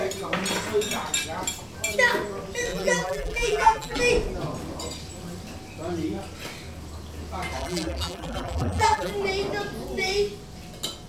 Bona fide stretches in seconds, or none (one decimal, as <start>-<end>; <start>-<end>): 0.0-2.7; 4.0-7.6; 9.1-11.1